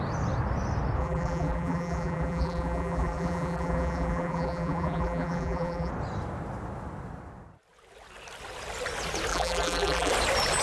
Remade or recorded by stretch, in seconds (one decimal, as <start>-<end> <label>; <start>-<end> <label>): 0.0-1.0 recorded; 1.0-5.9 remade; 5.9-9.3 recorded; 9.3-10.1 remade; 10.1-10.6 recorded